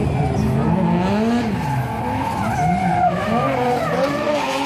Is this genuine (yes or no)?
yes